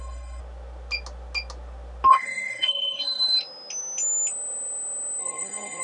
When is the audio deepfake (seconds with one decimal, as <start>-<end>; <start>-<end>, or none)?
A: 0.0-0.4; 2.1-3.4; 5.2-5.8